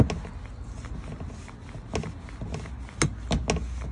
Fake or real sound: real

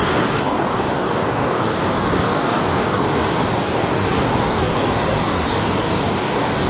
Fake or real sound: fake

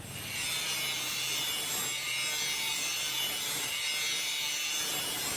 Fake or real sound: real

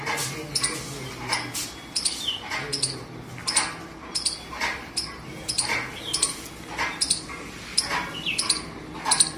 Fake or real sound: real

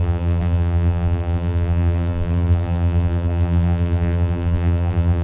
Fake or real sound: fake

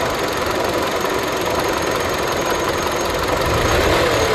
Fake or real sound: real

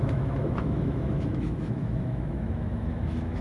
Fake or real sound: fake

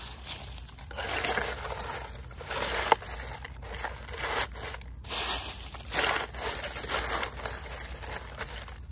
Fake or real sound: real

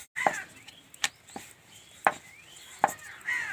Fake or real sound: real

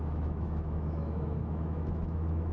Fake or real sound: fake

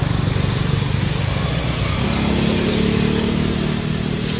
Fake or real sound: real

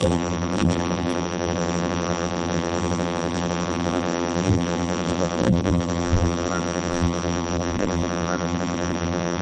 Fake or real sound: fake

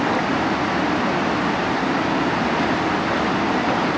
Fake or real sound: real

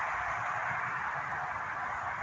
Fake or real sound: real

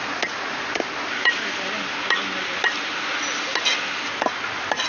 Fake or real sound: real